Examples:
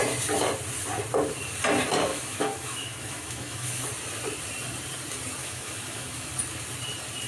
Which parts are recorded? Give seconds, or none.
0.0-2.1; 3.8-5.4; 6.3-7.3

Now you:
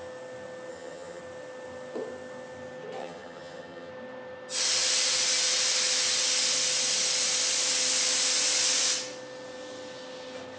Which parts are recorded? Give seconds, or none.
0.0-0.7; 1.2-3.0; 3.9-10.6